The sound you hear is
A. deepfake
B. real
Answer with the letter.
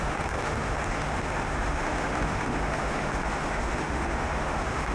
A